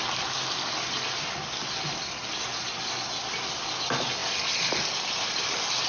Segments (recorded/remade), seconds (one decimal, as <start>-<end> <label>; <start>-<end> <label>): 0.0-5.9 recorded